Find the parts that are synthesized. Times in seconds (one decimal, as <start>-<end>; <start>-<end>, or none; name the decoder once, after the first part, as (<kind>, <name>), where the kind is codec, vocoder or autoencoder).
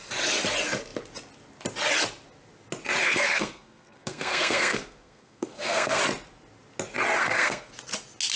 3.0-6.0 (codec, SNAC); 7.2-7.7